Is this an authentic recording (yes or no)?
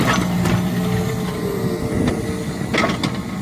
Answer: yes